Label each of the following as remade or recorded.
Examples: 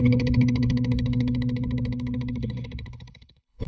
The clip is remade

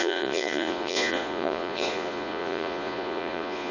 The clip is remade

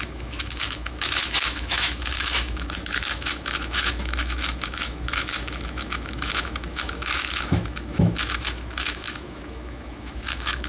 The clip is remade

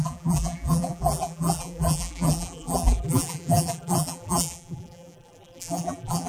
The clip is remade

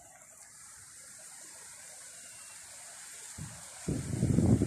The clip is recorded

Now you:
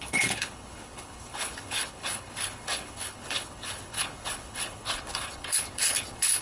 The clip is remade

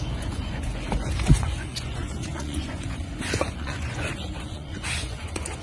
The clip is remade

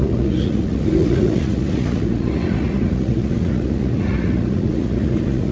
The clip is remade